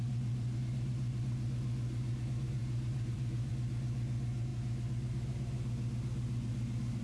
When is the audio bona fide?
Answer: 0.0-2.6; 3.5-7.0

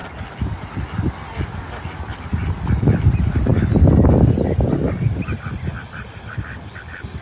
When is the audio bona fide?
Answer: 0.0-7.2

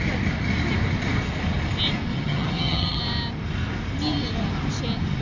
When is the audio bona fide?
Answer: 0.0-2.1; 3.0-5.2

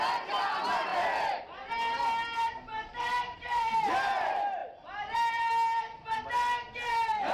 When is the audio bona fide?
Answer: 0.0-2.8; 3.7-4.6; 5.5-7.3

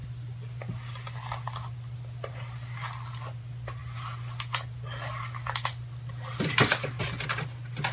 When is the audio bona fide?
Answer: 0.0-7.9

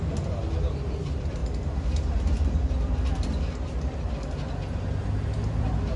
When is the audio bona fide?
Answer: 0.0-6.0

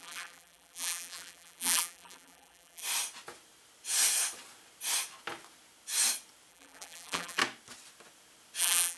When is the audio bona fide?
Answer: 2.8-6.5; 7.4-8.6